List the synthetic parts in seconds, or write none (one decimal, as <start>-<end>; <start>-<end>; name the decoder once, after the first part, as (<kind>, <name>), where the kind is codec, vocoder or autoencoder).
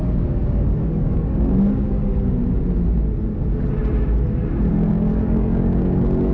0.0-2.4 (codec, DAC); 4.7-6.3